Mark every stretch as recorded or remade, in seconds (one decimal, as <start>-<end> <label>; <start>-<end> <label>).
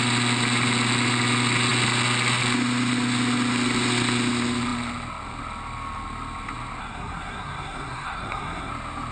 0.0-6.8 recorded; 6.8-8.7 remade; 8.7-9.1 recorded